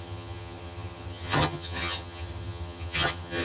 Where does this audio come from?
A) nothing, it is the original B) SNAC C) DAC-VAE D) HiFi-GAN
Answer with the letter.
D